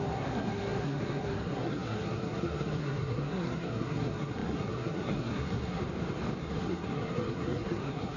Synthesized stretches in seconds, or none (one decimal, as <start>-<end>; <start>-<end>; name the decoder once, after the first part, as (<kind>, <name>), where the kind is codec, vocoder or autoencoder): 0.0-5.8 (codec, SNAC); 6.4-8.2